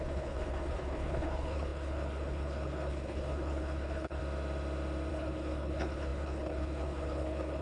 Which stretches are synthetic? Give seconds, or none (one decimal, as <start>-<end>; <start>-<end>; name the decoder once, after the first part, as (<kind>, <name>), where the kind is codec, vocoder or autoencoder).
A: 0.0-4.2 (codec, HILCodec); 5.1-7.6